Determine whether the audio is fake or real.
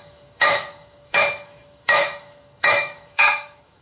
fake